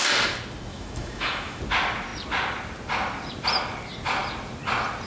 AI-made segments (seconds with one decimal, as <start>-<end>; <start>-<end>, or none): 0.7-1.6